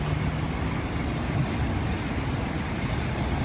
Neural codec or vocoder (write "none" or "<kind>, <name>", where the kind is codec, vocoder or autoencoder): none